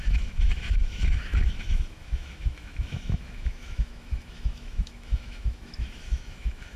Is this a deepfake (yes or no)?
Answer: yes